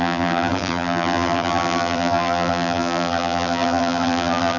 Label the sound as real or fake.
fake